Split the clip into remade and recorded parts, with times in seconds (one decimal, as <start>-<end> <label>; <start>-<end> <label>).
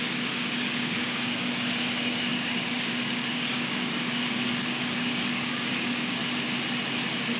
0.0-6.2 remade; 6.2-7.4 recorded